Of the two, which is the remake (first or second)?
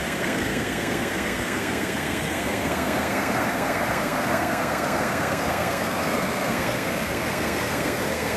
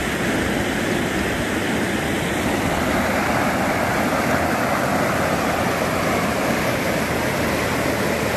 first